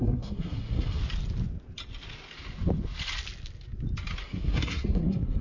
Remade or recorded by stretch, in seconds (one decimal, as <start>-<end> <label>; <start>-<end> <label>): 0.0-1.0 remade; 1.0-4.2 recorded; 4.2-5.4 remade